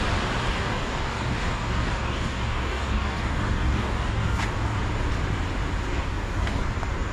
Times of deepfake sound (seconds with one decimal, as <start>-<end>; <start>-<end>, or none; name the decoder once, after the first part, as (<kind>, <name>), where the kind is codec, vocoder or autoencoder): 0.5-4.8 (codec, DAC); 5.9-6.6